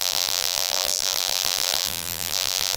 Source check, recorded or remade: remade